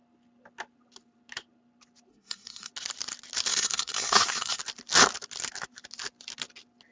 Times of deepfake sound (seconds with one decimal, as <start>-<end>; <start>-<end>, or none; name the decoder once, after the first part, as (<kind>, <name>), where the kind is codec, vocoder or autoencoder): 2.1-2.7 (codec, SNAC); 3.5-4.6